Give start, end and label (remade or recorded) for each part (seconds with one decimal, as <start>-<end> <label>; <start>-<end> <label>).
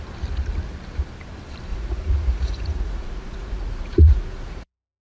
0.0-1.7 recorded; 1.7-5.0 remade